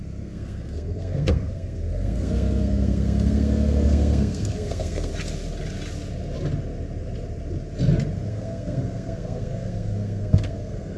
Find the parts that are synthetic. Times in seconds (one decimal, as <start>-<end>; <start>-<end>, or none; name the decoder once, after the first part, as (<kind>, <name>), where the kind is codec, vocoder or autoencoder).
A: 0.0-5.1 (codec, SNAC); 8.3-11.0